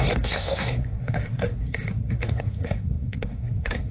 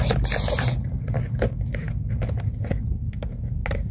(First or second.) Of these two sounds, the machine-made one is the first